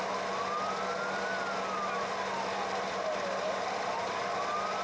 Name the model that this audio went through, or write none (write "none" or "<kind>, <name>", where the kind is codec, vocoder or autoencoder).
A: none